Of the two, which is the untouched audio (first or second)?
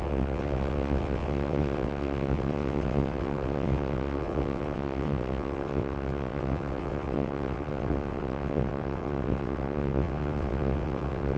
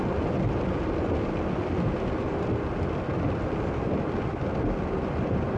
second